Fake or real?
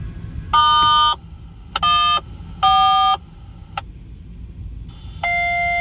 real